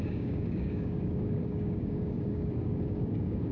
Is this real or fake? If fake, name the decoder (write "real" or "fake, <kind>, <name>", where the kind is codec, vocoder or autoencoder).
fake, codec, DAC